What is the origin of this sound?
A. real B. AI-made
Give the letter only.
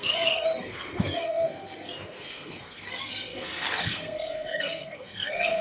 B